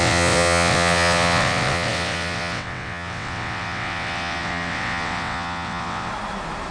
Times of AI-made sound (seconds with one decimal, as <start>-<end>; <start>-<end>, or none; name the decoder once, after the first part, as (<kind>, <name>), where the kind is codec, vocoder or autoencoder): 0.0-6.1 (vocoder, WaveNeXt)